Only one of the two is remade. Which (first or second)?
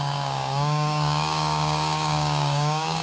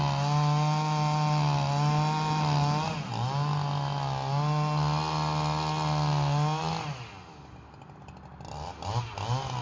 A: first